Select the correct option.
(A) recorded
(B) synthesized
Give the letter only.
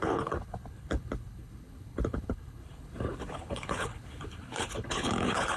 B